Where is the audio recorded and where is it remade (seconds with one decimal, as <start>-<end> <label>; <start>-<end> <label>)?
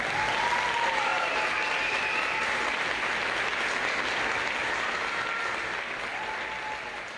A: 0.0-1.1 recorded; 1.1-3.0 remade; 3.0-7.2 recorded